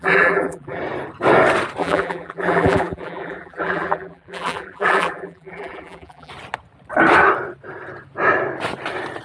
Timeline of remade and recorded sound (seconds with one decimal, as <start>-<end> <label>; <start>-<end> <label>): 0.0-0.8 remade; 0.8-1.8 recorded; 1.8-6.3 remade; 6.3-9.2 recorded